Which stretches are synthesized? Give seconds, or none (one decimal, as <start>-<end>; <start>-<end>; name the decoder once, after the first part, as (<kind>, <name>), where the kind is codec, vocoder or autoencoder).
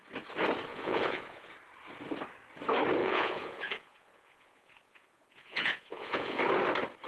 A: 0.7-1.5 (vocoder, Vocos); 3.0-6.4